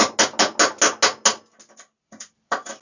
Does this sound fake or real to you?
real